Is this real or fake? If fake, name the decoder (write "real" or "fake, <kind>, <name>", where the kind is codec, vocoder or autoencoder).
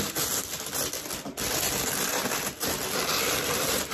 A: real